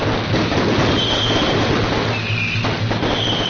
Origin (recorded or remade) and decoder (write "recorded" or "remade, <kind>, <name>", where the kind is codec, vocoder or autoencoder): recorded